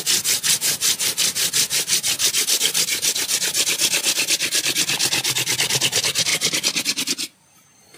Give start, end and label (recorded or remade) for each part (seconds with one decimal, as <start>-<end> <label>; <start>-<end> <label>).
0.0-8.0 recorded